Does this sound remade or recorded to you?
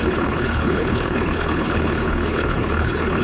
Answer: remade